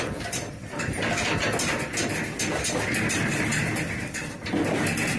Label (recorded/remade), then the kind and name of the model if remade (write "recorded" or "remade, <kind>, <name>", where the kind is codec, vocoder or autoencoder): recorded